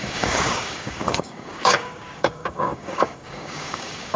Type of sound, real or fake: fake